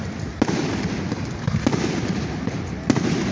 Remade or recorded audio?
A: recorded